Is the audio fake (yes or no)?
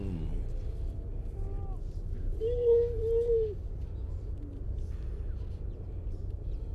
no